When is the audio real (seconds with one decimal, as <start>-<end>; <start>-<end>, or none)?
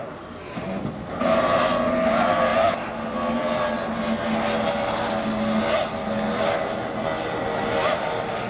0.0-8.5